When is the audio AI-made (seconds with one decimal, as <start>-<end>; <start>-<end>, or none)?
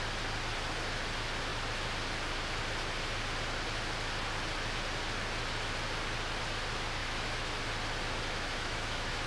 7.0-7.6; 8.3-9.3